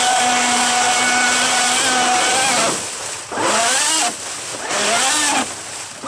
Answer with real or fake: real